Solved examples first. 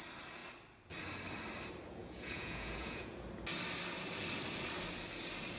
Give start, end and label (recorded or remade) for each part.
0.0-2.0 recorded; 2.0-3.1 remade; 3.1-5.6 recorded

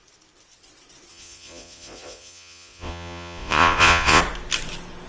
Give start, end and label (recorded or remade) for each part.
0.0-1.1 recorded; 1.1-4.2 remade; 4.2-5.1 recorded

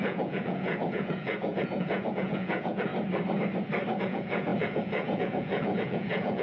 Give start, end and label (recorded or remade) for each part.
0.0-2.9 remade; 2.9-4.0 recorded; 4.0-6.4 remade

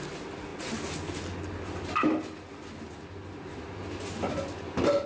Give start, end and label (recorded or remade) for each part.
0.0-5.1 recorded

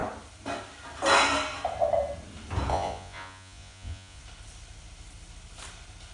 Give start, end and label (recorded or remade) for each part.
0.0-2.7 recorded; 2.7-4.2 remade; 4.2-6.1 recorded

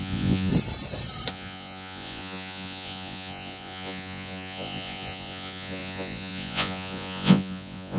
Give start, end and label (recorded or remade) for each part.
0.0-0.5 remade; 0.5-1.3 recorded; 1.3-8.0 remade